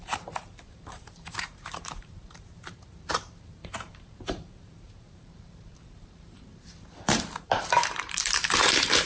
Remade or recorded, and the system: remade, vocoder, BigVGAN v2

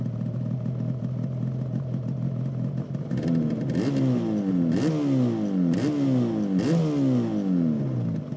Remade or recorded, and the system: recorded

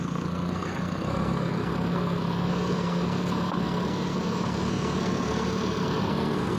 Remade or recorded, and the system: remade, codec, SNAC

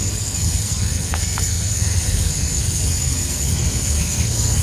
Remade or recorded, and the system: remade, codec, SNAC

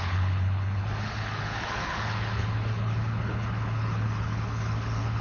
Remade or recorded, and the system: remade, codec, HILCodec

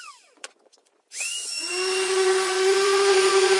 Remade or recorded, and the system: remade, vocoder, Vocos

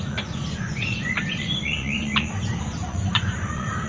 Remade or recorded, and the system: remade, vocoder, Vocos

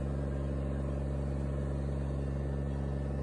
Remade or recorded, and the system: recorded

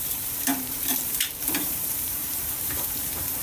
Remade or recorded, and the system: remade, vocoder, BigVGAN v2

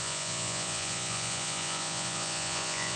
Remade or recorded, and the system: remade, vocoder, Vocos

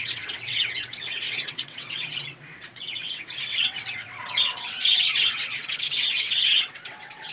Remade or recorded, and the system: remade, vocoder, WaveNeXt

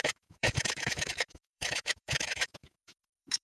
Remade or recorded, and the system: remade, autoencoder, DAC-VAE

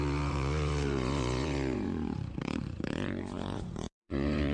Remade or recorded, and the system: remade, vocoder, Vocos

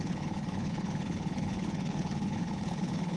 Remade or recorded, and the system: remade, codec, HILCodec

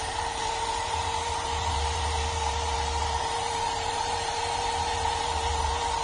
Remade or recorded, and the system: remade, vocoder, BigVGAN v2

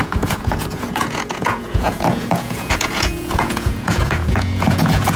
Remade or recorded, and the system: remade, vocoder, Vocos